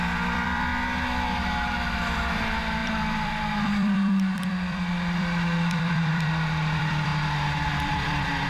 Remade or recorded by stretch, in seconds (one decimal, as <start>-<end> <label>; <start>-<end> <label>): 0.0-0.7 remade; 0.7-2.3 recorded; 2.3-7.1 remade; 7.1-7.8 recorded; 7.8-8.5 remade